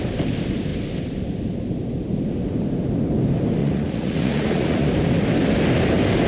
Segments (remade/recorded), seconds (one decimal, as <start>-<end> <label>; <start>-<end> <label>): 0.0-3.6 recorded; 3.6-4.9 remade; 4.9-6.3 recorded